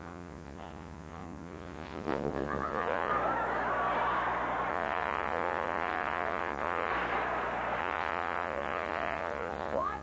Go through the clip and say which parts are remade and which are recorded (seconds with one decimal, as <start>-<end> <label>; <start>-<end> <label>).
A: 0.0-3.1 remade; 3.1-4.7 recorded; 4.7-6.9 remade; 6.9-7.8 recorded; 7.8-10.0 remade